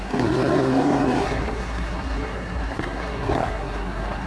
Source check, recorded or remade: remade